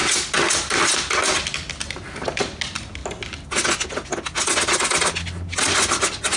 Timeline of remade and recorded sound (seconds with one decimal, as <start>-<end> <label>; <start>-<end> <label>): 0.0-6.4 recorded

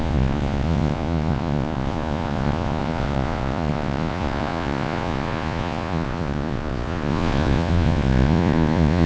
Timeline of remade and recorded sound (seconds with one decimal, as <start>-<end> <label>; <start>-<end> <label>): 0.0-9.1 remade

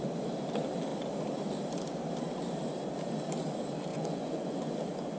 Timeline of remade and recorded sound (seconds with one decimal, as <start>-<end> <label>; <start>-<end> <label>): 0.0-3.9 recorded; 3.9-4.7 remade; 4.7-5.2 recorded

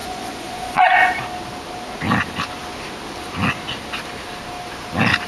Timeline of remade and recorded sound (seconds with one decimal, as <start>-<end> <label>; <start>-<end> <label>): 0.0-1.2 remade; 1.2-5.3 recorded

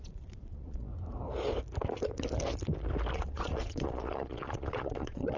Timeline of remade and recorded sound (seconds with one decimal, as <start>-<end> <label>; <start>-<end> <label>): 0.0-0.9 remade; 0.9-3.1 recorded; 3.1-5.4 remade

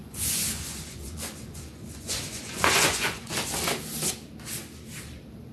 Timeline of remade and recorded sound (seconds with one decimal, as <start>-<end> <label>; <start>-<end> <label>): 0.0-3.3 remade; 3.3-5.5 recorded

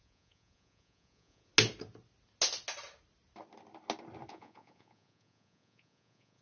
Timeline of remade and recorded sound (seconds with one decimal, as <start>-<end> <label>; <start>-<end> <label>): 0.0-1.5 remade; 1.5-4.3 recorded; 4.3-6.4 remade